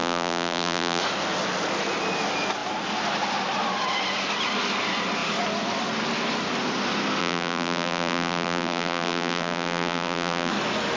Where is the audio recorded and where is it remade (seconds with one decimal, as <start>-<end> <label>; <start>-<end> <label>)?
0.0-1.0 remade; 1.0-7.2 recorded; 7.2-10.5 remade; 10.5-11.0 recorded